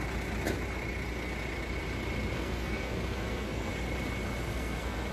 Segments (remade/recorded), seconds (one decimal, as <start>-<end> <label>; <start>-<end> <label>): 0.0-2.3 recorded; 2.3-3.7 remade; 3.7-4.5 recorded; 4.5-5.1 remade